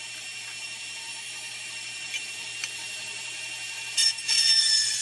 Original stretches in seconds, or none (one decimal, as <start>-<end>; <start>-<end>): 0.0-1.1; 1.7-5.0